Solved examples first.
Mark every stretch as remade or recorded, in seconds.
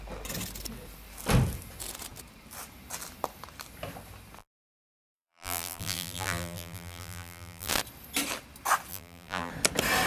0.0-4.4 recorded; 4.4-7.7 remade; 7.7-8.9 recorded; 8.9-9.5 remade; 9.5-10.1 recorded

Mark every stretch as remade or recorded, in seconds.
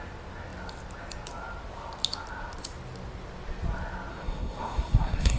0.0-4.1 recorded; 4.1-5.4 remade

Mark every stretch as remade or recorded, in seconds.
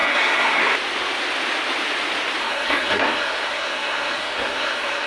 0.0-0.6 remade; 0.6-2.4 recorded; 2.4-5.1 remade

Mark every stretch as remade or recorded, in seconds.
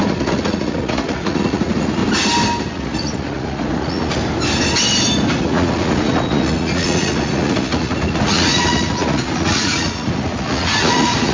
0.0-2.0 remade; 2.0-2.7 recorded; 2.7-4.2 remade; 4.2-5.4 recorded; 5.4-11.3 remade